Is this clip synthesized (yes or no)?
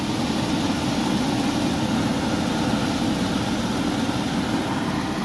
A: no